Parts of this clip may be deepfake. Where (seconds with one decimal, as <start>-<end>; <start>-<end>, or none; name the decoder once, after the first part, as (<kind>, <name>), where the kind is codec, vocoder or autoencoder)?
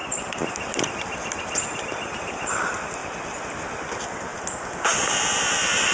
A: 0.0-3.0 (vocoder, BigVGAN v2); 3.6-5.9